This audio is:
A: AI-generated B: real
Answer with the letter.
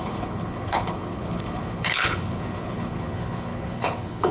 A